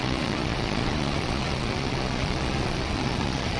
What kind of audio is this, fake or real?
fake